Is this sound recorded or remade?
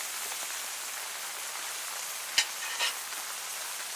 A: recorded